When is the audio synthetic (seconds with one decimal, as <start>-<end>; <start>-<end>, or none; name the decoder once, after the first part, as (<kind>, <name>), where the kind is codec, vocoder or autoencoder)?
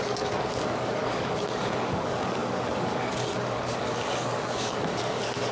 0.0-5.5 (codec, DAC)